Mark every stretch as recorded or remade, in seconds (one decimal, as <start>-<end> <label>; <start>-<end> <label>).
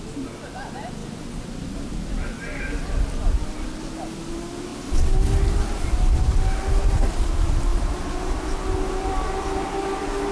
0.0-10.3 recorded